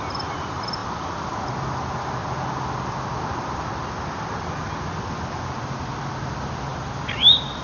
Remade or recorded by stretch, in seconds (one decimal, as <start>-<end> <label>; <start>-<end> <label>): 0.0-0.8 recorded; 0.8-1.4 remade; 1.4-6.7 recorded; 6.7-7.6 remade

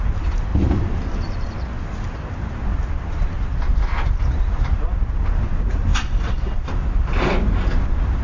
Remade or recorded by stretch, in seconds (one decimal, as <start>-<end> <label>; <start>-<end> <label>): 0.0-5.9 recorded; 5.9-6.8 remade; 6.8-8.2 recorded

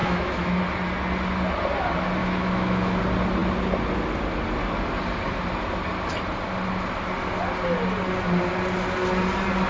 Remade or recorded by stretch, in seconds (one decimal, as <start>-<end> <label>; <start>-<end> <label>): 0.0-0.6 remade; 0.6-2.2 recorded; 2.2-3.0 remade; 3.0-9.7 recorded